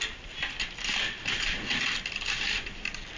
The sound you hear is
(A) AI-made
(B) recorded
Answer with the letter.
B